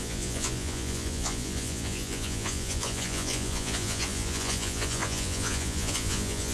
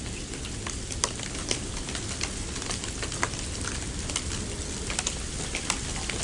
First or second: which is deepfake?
first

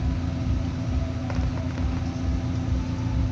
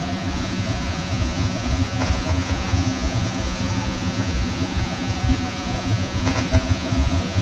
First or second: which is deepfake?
second